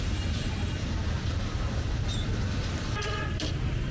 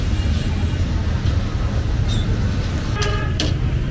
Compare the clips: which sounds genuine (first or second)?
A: second